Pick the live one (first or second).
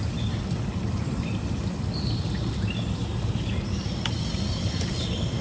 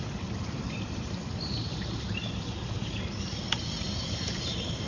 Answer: first